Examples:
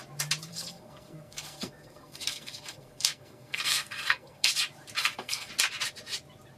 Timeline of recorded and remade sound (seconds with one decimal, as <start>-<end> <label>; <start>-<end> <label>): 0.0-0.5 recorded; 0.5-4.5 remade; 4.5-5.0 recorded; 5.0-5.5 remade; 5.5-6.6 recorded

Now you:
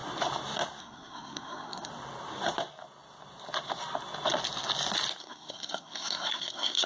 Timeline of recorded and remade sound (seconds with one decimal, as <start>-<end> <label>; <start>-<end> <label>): 0.0-0.8 recorded; 0.8-1.9 remade; 1.9-5.2 recorded; 5.2-6.9 remade

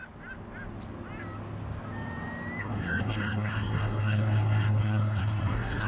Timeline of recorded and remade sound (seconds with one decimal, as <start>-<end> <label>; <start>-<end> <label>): 0.0-2.6 recorded; 2.6-5.9 remade

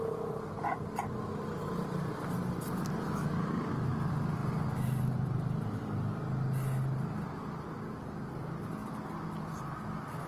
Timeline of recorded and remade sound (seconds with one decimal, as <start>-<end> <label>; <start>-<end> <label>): 0.0-10.3 recorded

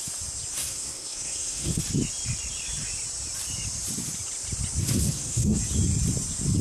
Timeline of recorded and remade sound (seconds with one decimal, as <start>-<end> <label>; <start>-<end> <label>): 0.0-0.5 recorded; 0.5-1.8 remade; 1.8-4.8 recorded; 4.8-5.6 remade; 5.6-6.6 recorded